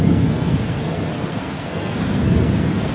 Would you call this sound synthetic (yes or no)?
yes